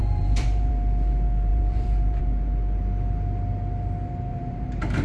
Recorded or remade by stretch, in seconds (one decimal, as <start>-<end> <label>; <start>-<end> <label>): 0.0-0.7 remade; 0.7-1.5 recorded; 1.5-2.2 remade; 2.2-4.3 recorded; 4.3-5.0 remade